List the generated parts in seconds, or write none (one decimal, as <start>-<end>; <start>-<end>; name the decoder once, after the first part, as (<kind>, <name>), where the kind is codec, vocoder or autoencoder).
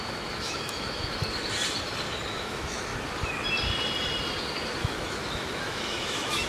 0.0-1.2 (autoencoder, DAC-VAE); 2.3-2.9; 4.8-6.5